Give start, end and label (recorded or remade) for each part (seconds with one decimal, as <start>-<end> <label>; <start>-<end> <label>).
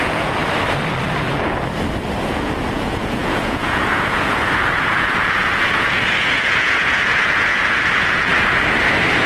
0.0-0.4 remade; 0.4-2.3 recorded; 2.3-8.3 remade; 8.3-9.3 recorded